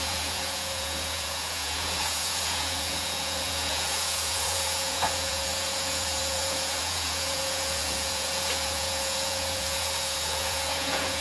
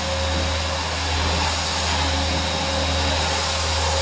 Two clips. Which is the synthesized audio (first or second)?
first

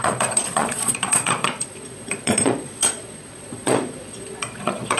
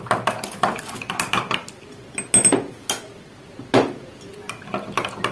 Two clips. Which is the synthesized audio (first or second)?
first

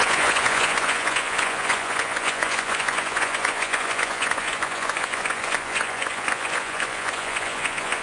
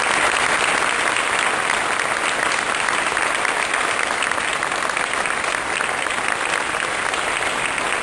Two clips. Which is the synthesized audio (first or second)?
first